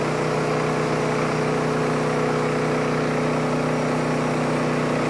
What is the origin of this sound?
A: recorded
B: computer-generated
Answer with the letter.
A